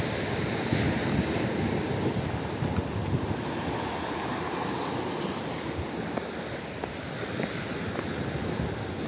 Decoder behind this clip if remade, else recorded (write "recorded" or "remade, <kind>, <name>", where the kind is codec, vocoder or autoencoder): recorded